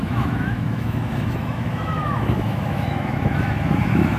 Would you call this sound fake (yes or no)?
yes